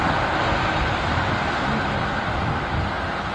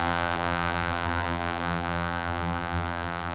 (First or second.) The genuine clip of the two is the first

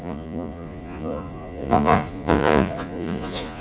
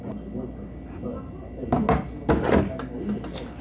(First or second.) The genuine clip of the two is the second